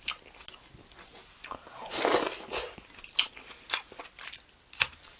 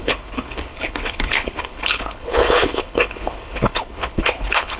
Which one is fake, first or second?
second